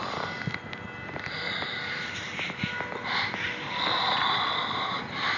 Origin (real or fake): real